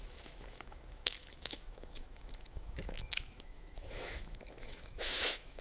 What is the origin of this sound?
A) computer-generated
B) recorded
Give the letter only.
A